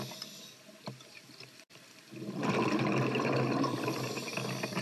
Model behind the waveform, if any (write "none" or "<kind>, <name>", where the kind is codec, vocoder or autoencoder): none